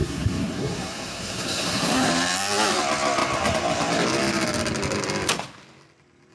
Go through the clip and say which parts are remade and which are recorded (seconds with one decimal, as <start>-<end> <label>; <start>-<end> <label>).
0.0-2.1 remade; 2.1-6.3 recorded